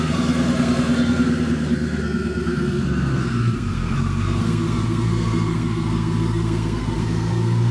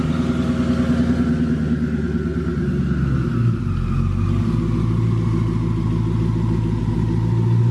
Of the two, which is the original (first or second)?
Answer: second